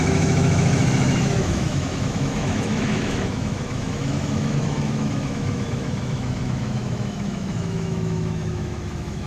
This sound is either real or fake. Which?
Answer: fake